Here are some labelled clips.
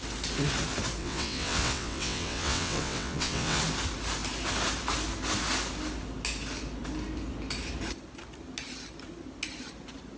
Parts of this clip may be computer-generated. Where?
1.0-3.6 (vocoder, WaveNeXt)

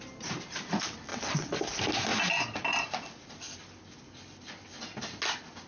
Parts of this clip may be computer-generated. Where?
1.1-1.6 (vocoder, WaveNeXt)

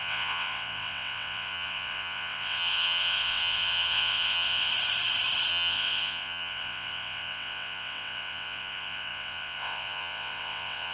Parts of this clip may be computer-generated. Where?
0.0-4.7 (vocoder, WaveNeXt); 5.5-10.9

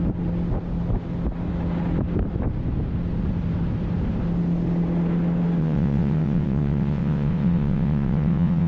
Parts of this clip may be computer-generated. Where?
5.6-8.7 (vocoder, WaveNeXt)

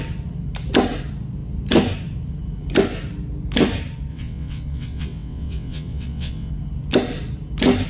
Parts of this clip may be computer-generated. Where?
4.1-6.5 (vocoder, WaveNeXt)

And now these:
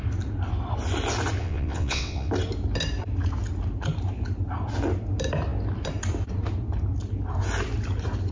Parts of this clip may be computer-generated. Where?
1.4-2.3 (vocoder, WaveNeXt)